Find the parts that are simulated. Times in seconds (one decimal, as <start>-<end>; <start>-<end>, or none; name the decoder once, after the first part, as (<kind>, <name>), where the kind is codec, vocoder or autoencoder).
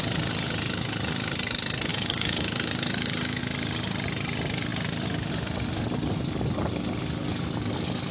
1.9-3.4 (codec, DAC)